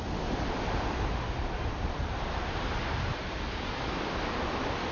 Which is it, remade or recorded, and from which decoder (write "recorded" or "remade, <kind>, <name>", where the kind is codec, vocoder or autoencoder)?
recorded